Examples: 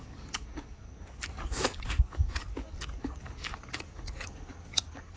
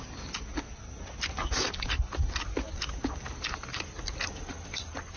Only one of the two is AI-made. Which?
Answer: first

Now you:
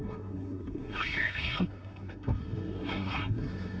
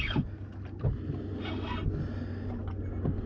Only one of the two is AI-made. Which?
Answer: first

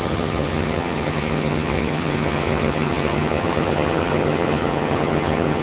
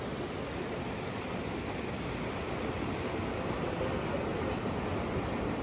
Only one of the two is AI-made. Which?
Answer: first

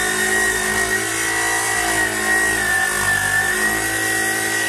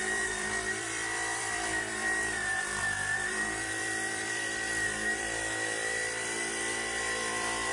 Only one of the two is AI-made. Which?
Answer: second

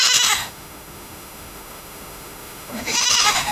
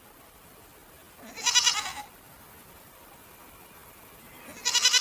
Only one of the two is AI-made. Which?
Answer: first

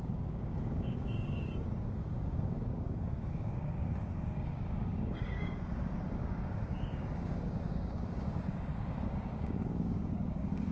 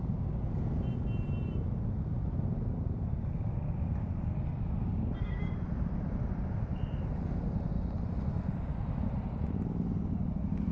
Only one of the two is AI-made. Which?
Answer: first